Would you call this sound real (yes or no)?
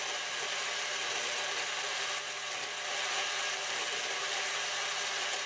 yes